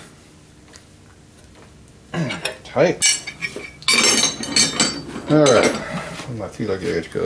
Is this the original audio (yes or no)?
yes